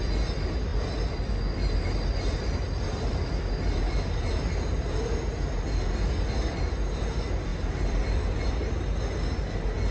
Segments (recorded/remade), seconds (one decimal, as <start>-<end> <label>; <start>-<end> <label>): 0.0-9.9 recorded